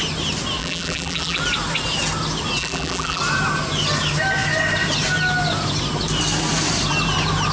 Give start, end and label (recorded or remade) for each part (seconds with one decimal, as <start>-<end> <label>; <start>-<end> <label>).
0.0-0.6 recorded; 0.6-1.4 remade; 1.4-2.6 recorded; 2.6-3.2 remade; 3.2-7.5 recorded

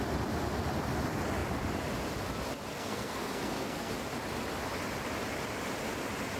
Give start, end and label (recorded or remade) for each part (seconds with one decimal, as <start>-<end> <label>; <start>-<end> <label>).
0.0-2.7 recorded; 2.7-3.9 remade; 3.9-6.4 recorded

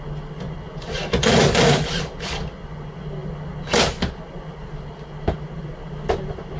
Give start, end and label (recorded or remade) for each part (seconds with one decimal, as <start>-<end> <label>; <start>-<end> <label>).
0.0-6.6 recorded

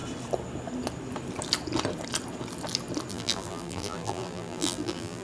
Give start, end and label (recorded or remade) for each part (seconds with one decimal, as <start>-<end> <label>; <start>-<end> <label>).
0.0-3.1 recorded; 3.1-5.2 remade

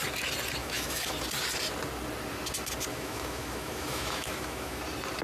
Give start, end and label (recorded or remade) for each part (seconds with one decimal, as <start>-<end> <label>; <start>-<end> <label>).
0.0-0.6 recorded; 0.6-1.1 remade; 1.1-2.9 recorded; 2.9-4.8 remade; 4.8-5.2 recorded

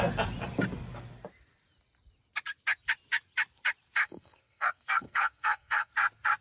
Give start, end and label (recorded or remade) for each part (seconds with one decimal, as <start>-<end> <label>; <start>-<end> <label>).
0.0-4.0 recorded; 4.0-5.9 remade; 5.9-6.4 recorded

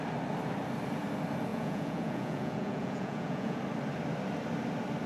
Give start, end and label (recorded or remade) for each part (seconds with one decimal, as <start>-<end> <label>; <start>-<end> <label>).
0.0-1.5 recorded; 1.5-3.6 remade; 3.6-5.1 recorded

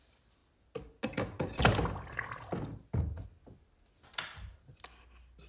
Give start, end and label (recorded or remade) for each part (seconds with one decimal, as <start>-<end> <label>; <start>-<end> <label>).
0.0-5.5 recorded